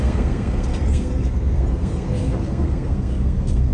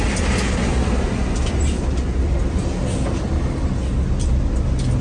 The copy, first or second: first